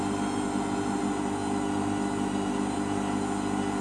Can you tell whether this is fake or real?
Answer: real